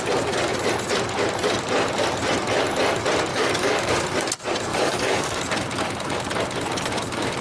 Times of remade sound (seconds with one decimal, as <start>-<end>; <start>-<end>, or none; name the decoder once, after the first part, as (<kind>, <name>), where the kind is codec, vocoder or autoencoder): 3.3-3.9 (codec, DAC); 4.7-5.4